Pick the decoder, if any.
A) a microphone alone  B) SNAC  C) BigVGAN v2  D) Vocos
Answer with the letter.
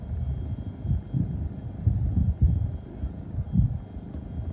A